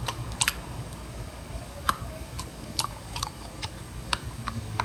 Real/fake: fake